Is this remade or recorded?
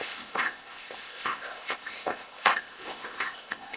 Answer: remade